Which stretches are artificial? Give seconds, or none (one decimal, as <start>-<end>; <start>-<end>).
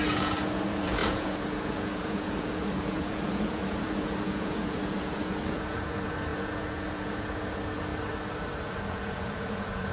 0.0-7.9; 8.6-9.9